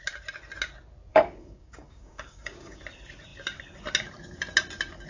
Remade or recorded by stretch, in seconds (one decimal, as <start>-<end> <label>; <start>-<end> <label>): 0.0-1.1 recorded; 1.1-2.8 remade; 2.8-5.1 recorded